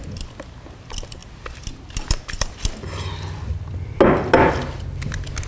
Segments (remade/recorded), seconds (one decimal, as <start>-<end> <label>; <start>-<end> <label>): 0.0-5.5 recorded